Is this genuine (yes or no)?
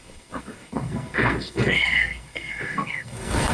no